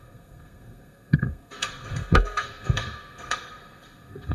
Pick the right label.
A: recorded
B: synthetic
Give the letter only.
B